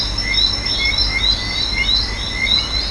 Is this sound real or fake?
real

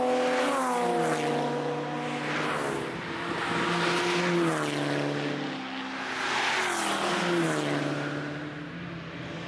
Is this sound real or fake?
real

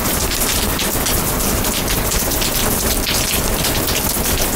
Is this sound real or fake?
real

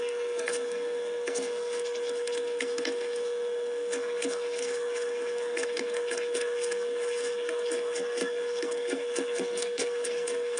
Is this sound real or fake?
fake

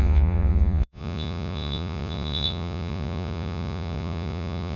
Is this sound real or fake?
fake